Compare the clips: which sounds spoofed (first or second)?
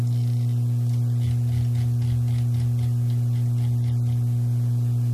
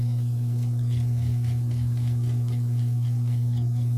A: second